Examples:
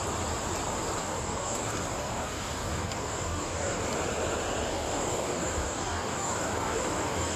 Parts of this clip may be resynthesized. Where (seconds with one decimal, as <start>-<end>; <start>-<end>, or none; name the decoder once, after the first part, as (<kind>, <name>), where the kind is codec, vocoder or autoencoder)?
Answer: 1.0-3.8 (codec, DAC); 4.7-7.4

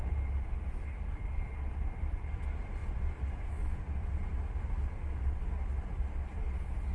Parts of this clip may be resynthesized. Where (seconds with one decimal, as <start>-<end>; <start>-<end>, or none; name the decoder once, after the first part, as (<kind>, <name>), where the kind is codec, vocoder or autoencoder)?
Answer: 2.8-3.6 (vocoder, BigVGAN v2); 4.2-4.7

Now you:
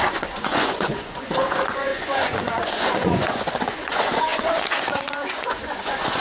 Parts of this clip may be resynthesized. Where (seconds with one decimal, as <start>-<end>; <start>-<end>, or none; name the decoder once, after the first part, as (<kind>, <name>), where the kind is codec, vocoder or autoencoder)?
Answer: 0.0-6.2 (vocoder, Vocos)

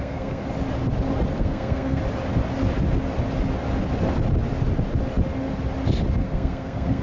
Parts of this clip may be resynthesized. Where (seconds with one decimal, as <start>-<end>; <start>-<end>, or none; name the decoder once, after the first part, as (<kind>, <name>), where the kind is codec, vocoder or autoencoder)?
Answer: 0.0-0.4 (codec, SNAC); 1.4-2.0; 6.2-7.0

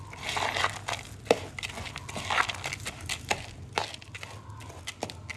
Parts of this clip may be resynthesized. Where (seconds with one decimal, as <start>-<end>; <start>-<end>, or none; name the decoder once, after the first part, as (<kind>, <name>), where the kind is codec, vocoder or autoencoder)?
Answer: none

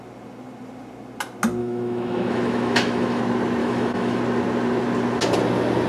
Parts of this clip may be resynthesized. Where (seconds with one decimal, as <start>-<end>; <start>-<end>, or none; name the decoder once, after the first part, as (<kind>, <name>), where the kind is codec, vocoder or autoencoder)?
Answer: 1.6-3.2 (autoencoder, DAC-VAE); 3.6-4.2

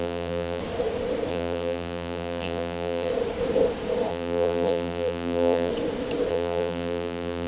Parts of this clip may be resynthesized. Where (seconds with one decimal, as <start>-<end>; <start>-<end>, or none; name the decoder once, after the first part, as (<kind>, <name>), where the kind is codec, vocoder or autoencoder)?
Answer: 0.0-0.6 (vocoder, BigVGAN v2); 1.3-3.1; 4.1-5.7; 6.3-7.5